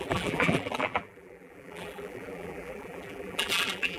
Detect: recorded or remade remade